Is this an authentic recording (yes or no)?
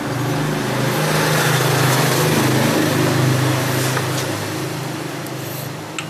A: yes